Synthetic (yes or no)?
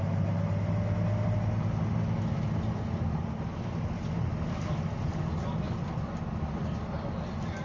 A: no